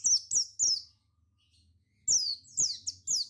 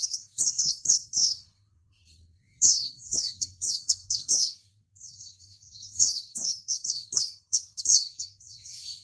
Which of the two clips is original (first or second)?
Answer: first